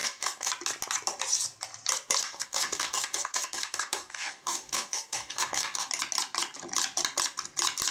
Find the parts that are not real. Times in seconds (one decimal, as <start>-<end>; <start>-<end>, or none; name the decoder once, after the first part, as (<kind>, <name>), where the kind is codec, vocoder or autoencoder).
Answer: 0.0-0.5 (codec, DAC); 2.2-5.9